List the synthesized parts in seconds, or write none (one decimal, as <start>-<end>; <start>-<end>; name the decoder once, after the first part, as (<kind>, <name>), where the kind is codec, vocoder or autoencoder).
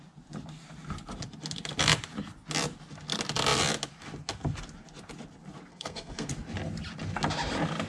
5.7-6.3 (codec, SNAC)